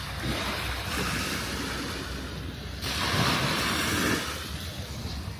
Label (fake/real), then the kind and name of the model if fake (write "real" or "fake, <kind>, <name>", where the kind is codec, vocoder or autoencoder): real